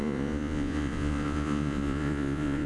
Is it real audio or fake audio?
fake